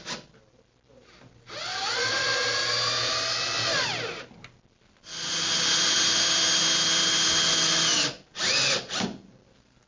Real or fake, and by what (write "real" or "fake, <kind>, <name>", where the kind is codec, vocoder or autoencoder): real